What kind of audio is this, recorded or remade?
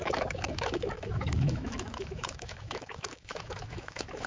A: remade